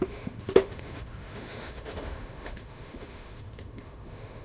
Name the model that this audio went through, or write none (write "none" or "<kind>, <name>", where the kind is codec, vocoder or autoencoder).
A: autoencoder, DAC-VAE